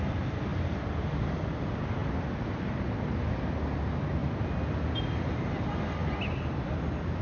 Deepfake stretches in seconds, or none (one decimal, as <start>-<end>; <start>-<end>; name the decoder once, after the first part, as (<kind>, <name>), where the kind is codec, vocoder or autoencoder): none

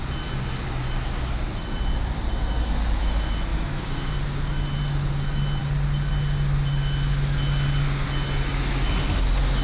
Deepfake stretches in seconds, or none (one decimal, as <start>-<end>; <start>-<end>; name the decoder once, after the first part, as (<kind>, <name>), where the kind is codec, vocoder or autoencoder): 3.5-4.1 (autoencoder, DAC-VAE)

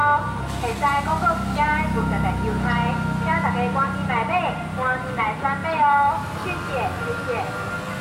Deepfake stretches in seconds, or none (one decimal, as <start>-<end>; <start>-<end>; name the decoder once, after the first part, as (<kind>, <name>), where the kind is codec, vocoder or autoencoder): none

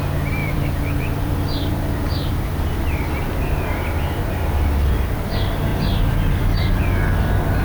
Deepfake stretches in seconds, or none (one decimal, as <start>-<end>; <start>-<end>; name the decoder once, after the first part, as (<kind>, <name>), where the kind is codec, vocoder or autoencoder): 0.4-2.3 (vocoder, BigVGAN v2); 5.7-6.8

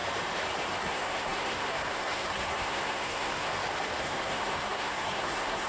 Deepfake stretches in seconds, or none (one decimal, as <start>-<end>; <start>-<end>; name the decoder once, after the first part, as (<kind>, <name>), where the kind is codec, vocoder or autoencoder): 0.8-3.5 (codec, SNAC); 4.0-5.7

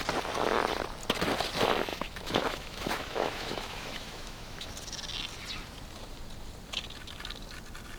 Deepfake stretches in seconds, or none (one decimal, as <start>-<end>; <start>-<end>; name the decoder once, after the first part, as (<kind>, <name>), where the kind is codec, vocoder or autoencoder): 1.9-4.7 (autoencoder, DAC-VAE)

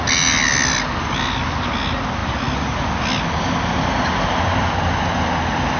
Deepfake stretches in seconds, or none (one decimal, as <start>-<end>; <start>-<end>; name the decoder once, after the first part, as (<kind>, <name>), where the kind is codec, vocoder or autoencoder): none

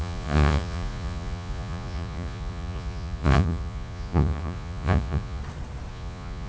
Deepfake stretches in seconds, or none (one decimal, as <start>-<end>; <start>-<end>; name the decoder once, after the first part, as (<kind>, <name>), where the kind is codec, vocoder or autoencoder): 0.0-5.4 (vocoder, Vocos); 5.9-6.5